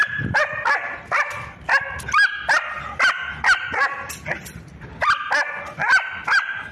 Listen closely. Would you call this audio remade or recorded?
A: recorded